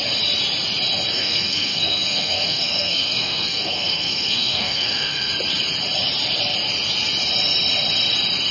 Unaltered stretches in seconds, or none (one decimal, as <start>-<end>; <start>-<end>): 0.0-1.2; 5.3-8.5